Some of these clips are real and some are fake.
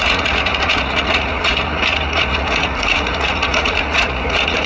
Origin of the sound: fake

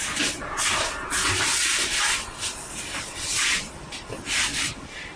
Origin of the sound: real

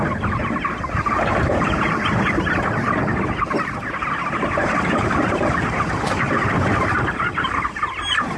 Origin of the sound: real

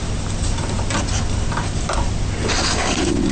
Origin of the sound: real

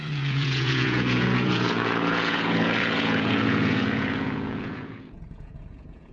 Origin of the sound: fake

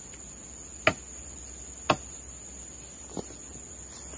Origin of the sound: real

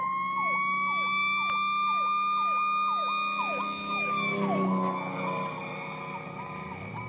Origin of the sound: real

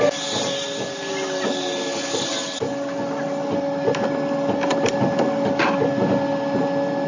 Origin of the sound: real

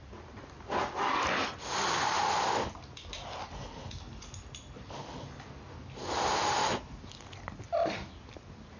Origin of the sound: real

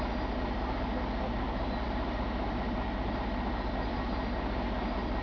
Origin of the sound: real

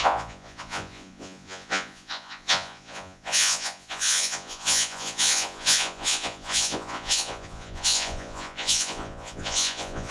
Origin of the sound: fake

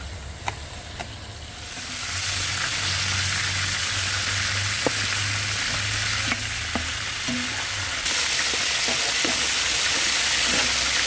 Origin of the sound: real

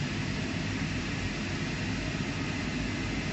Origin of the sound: real